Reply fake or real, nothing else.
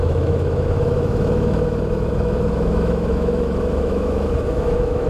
fake